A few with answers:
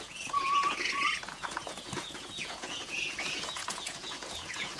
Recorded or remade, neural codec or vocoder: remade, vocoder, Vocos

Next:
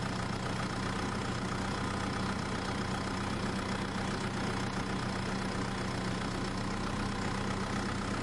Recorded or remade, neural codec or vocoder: recorded